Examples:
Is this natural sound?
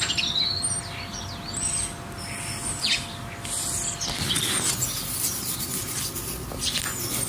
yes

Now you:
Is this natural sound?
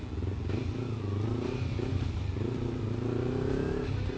yes